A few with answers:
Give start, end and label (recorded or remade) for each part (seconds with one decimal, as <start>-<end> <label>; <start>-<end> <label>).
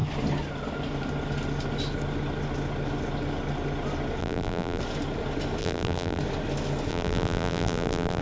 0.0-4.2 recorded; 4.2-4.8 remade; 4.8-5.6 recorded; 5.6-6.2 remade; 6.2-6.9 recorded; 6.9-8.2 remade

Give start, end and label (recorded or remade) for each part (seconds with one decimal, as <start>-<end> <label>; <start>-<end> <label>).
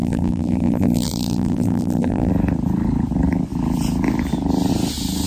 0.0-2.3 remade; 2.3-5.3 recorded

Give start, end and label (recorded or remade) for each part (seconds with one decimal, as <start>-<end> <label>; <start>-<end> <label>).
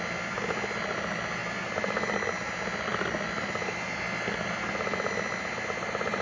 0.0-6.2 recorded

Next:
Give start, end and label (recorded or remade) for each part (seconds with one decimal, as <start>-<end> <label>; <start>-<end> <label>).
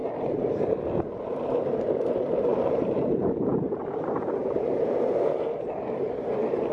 0.0-2.5 recorded; 2.5-3.1 remade; 3.1-4.4 recorded; 4.4-6.3 remade; 6.3-6.7 recorded